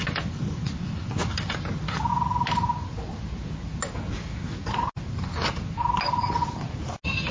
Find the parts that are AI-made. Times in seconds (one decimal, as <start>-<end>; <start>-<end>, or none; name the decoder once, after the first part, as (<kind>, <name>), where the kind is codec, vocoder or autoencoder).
none